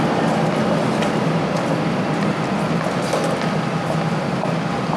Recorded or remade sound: recorded